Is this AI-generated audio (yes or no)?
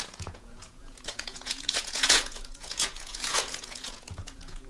yes